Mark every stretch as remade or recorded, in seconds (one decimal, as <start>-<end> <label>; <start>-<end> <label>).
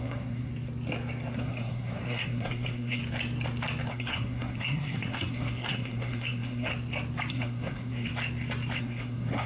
0.0-0.5 remade; 0.5-1.4 recorded; 1.4-3.0 remade; 3.0-3.9 recorded; 3.9-6.7 remade; 6.7-7.3 recorded; 7.3-8.1 remade; 8.1-8.8 recorded; 8.8-9.5 remade